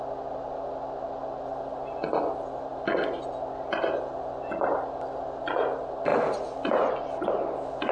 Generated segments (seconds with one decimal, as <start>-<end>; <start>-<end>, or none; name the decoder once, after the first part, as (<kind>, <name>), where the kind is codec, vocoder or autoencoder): none